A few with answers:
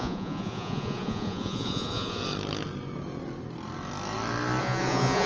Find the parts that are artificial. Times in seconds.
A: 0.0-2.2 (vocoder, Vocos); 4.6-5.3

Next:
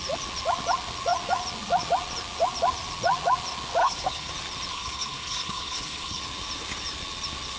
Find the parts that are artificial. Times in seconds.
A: 3.8-4.3 (codec, HILCodec); 4.7-6.2